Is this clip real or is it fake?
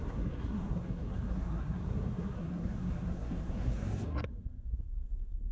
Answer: fake